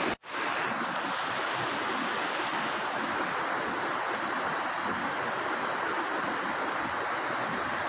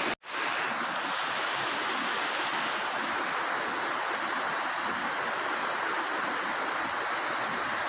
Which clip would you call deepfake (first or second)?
first